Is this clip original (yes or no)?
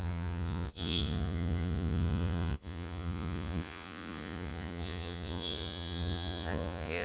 no